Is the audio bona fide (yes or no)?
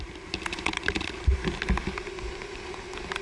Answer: yes